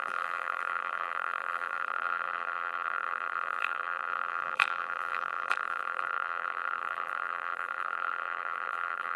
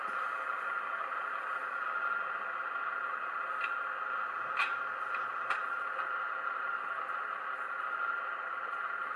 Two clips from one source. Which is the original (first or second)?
second